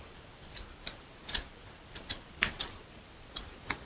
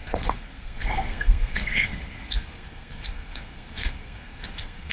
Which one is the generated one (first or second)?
second